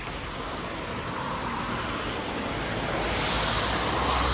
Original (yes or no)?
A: yes